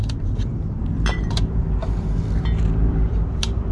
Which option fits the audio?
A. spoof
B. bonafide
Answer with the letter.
A